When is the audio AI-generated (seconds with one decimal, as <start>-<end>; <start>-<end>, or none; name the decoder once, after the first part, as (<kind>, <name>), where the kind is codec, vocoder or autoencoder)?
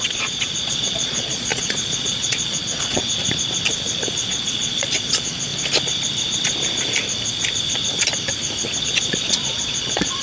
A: 0.0-3.2 (vocoder, Vocos); 4.3-5.5; 8.8-10.2